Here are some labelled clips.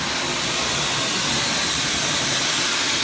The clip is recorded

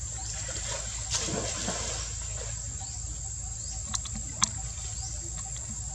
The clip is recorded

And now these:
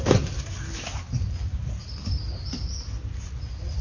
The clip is recorded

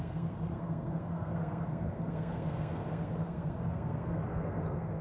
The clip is remade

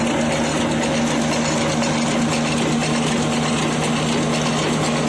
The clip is recorded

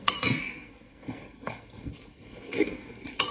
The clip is remade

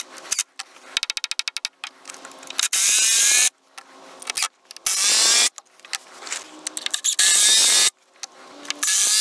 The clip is recorded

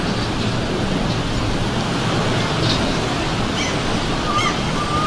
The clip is recorded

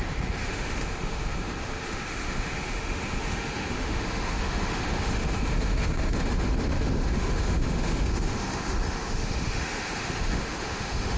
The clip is remade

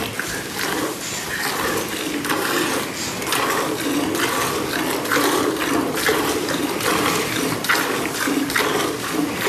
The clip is recorded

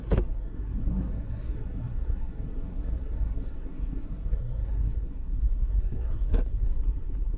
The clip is remade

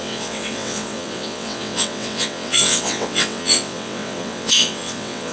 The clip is remade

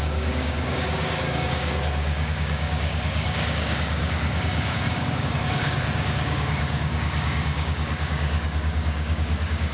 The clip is remade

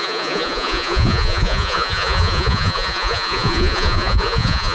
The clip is remade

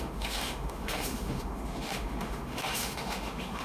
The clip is remade